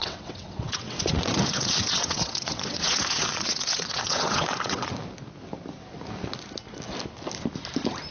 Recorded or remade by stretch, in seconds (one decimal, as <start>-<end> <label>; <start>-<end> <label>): 0.0-4.9 remade; 4.9-8.1 recorded